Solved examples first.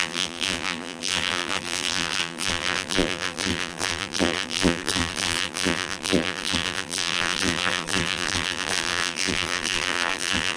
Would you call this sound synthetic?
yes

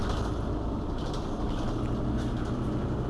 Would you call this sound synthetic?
no